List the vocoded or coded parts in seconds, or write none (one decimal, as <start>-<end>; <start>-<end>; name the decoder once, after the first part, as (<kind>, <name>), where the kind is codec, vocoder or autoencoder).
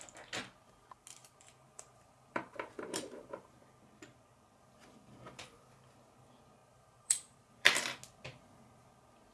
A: 1.2-3.2 (vocoder, BigVGAN v2); 6.6-7.8